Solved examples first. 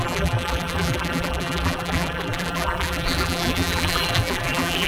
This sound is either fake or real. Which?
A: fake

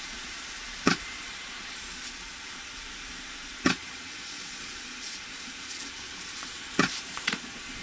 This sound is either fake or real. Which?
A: fake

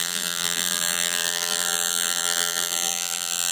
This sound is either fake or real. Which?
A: fake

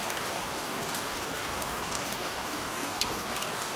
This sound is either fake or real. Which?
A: fake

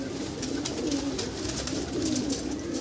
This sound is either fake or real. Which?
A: real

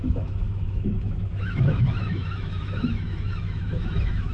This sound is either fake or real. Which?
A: fake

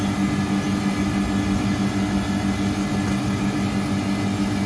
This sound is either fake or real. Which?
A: real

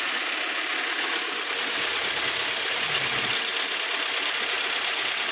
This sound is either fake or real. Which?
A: real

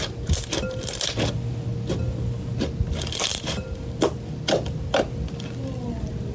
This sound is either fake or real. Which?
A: real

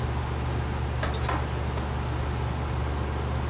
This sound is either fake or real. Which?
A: real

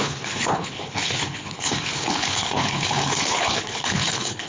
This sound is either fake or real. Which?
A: fake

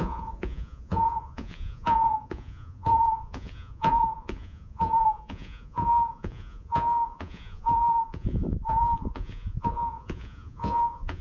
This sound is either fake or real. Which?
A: fake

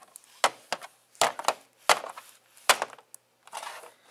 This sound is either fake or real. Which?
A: real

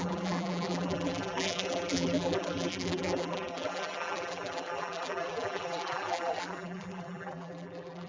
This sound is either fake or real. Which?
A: fake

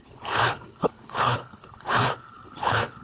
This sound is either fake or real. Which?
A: fake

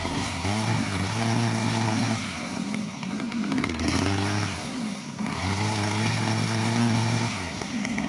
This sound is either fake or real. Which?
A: fake